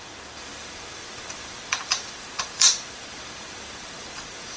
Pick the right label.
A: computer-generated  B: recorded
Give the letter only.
A